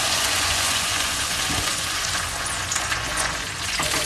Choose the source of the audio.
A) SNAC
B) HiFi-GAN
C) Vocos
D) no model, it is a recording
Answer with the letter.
C